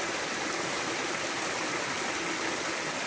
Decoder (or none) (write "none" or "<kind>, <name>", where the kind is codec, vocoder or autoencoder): none